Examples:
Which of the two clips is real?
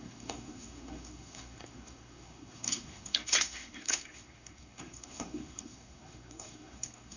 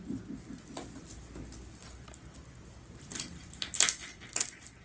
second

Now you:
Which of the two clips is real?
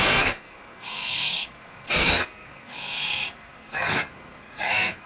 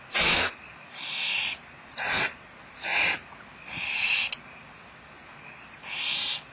second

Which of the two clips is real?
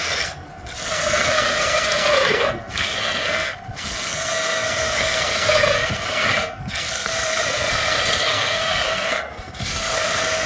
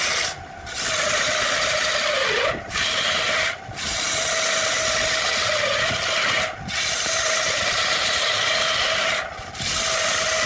second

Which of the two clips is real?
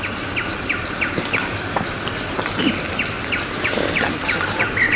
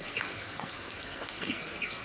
first